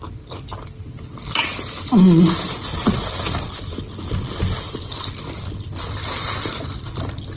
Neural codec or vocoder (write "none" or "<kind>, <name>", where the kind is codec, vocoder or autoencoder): none